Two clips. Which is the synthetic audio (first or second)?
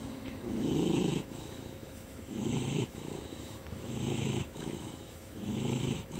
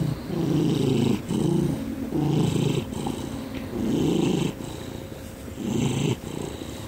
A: first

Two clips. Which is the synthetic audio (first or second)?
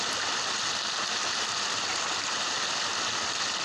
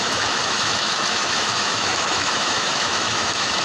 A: second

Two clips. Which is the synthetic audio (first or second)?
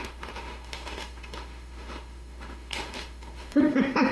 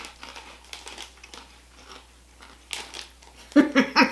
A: first